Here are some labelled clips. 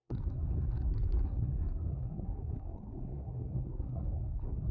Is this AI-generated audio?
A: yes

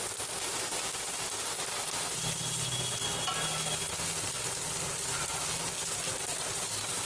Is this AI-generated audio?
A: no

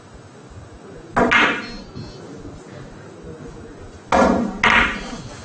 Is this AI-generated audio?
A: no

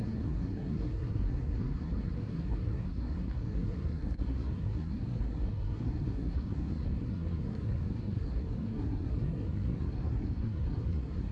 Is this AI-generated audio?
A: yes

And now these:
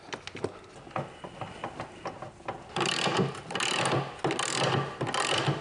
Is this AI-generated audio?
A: no